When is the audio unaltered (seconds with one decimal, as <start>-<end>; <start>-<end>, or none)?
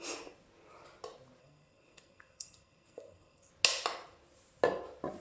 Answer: 0.0-1.4; 3.5-5.2